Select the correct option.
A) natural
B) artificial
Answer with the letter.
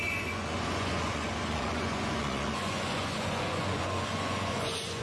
B